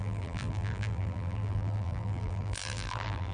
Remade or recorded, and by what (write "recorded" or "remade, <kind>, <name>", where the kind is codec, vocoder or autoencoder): remade, vocoder, BigVGAN v2